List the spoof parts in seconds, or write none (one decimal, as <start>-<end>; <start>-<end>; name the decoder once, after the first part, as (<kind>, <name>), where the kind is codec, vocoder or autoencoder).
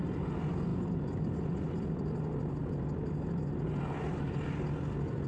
none